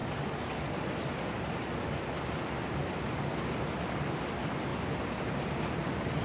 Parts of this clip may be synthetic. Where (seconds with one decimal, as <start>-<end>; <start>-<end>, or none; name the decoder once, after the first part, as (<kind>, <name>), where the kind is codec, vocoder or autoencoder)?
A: none